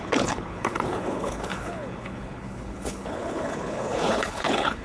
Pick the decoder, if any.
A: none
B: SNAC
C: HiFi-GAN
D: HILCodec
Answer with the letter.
D